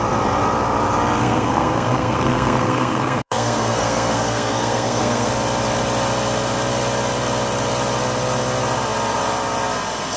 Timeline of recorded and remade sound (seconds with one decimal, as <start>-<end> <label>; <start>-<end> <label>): 0.0-1.2 recorded; 1.2-5.3 remade; 5.3-10.2 recorded